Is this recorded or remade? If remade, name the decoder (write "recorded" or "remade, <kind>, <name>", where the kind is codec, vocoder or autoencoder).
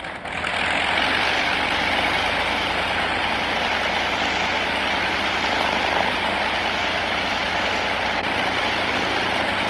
recorded